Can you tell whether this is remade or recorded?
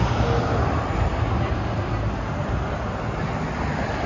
recorded